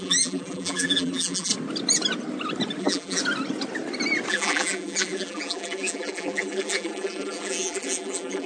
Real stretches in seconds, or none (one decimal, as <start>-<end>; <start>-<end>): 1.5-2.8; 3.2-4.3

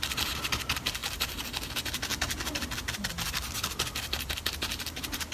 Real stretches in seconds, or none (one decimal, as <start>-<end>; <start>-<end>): 0.0-5.3

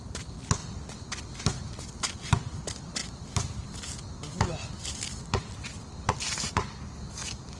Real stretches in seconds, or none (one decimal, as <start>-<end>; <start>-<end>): 0.0-7.6